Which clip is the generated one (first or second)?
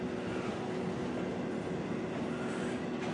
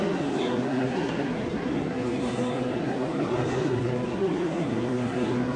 second